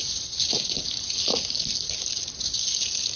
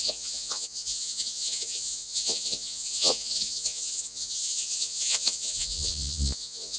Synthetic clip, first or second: second